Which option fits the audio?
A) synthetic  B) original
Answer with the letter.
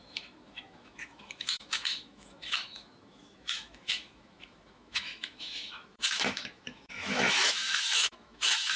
A